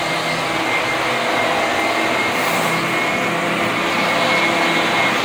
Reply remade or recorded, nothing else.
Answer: recorded